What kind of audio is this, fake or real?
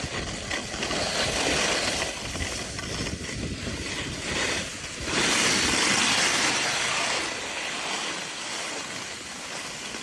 real